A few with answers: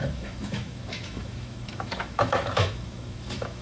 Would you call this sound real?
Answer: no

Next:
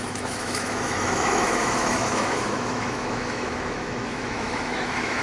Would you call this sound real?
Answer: no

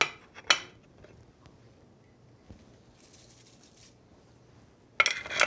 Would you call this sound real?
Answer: yes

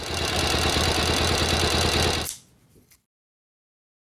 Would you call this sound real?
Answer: yes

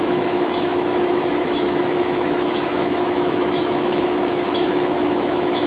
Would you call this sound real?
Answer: no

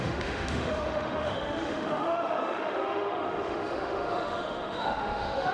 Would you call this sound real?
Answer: no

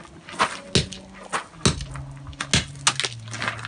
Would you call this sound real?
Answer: yes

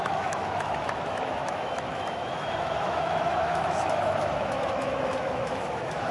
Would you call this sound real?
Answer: no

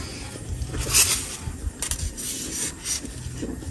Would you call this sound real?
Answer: yes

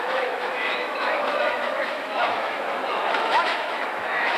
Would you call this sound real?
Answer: no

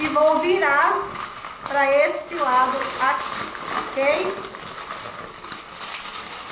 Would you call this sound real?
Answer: yes